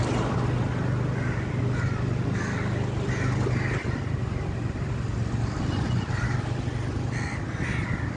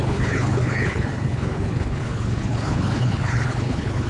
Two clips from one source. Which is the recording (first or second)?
first